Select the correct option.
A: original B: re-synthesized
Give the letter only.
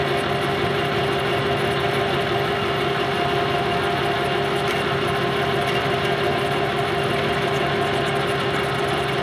A